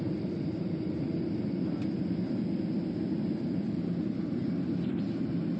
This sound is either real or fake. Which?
real